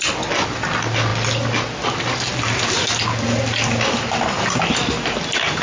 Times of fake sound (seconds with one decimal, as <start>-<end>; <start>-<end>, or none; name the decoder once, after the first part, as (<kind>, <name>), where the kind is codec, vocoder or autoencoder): none